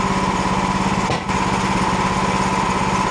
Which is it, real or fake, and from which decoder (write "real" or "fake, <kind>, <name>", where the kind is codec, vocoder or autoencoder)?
real